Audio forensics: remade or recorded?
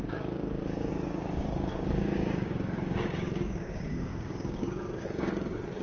remade